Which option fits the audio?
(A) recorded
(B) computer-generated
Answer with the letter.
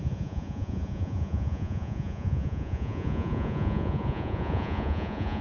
B